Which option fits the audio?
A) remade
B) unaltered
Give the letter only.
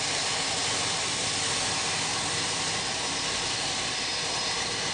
B